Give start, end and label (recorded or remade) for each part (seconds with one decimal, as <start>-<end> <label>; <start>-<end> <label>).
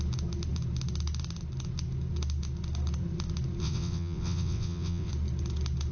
0.0-3.6 recorded; 3.6-5.1 remade; 5.1-5.9 recorded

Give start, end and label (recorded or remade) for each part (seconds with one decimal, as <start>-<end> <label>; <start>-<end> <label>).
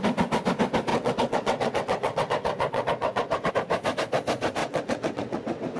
0.0-0.9 recorded; 0.9-3.5 remade; 3.5-4.6 recorded; 4.6-5.8 remade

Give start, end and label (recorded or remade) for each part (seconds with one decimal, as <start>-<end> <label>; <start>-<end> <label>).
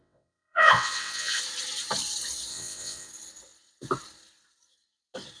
0.0-1.4 remade; 1.4-2.5 recorded; 2.5-3.1 remade; 3.1-5.4 recorded